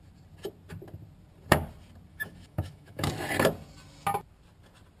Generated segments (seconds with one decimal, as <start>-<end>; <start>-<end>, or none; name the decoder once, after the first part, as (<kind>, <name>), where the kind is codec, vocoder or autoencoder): 2.1-3.1 (autoencoder, DAC-VAE)